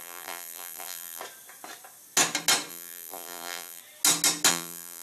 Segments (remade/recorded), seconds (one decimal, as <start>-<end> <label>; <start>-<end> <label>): 0.0-1.2 remade; 1.2-2.7 recorded; 2.7-3.8 remade; 3.8-4.5 recorded; 4.5-5.0 remade